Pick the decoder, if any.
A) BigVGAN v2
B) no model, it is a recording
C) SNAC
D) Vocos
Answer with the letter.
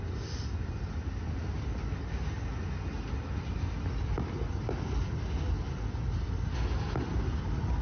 B